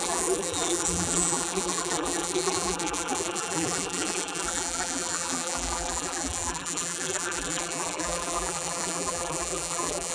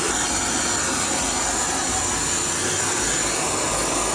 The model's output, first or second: first